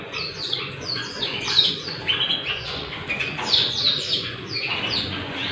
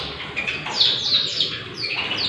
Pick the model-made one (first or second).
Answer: first